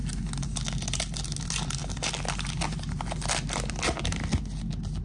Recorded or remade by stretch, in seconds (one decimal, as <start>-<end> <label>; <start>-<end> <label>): 0.0-5.0 recorded